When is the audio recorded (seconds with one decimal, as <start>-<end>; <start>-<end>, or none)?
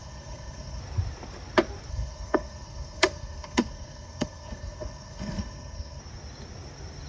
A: 0.8-1.9; 6.0-7.1